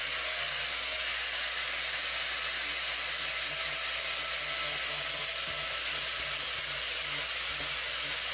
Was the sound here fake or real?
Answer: real